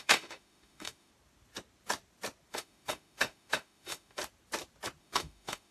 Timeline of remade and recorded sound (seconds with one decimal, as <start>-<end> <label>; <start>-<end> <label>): 0.0-1.1 remade; 1.1-2.5 recorded; 2.5-4.2 remade; 4.2-5.0 recorded; 5.0-5.7 remade